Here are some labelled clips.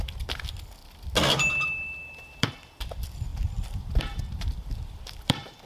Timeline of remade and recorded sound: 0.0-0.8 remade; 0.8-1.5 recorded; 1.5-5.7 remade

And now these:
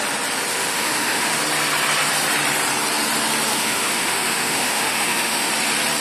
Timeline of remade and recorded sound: 0.0-0.5 recorded; 0.5-1.4 remade; 1.4-3.5 recorded; 3.5-5.5 remade; 5.5-6.0 recorded

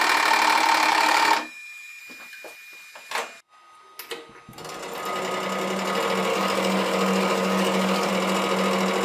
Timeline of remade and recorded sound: 0.0-0.9 recorded; 0.9-2.0 remade; 2.0-6.3 recorded; 6.3-8.1 remade; 8.1-9.0 recorded